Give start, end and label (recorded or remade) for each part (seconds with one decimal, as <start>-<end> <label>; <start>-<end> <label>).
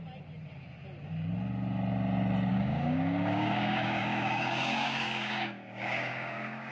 0.0-2.5 recorded; 2.5-6.7 remade